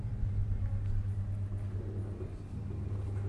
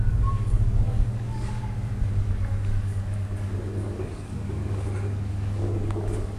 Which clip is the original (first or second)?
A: first